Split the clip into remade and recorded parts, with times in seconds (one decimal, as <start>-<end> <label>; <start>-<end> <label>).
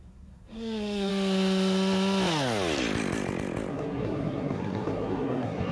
0.0-1.1 remade; 1.1-3.7 recorded; 3.7-5.7 remade